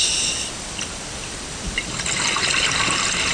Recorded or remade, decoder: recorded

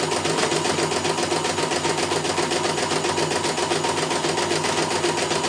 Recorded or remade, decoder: recorded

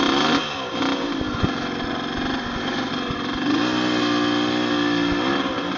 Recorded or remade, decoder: recorded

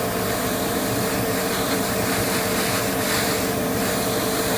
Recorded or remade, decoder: remade, vocoder, BigVGAN v2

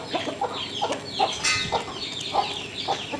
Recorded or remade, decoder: recorded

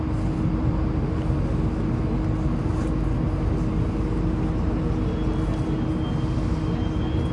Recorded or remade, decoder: recorded